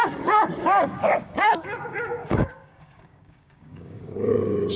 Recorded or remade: remade